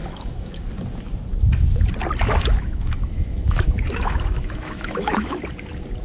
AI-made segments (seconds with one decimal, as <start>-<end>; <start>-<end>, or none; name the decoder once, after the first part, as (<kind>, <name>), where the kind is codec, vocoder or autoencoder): 0.0-0.6 (autoencoder, DAC-VAE); 2.2-5.4